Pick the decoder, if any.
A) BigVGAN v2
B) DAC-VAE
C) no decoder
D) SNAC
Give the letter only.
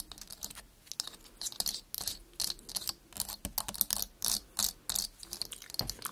C